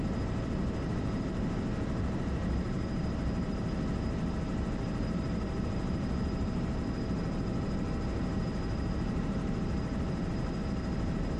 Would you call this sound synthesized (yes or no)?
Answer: yes